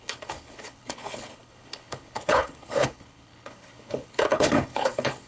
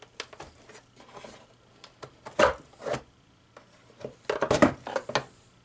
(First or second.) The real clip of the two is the second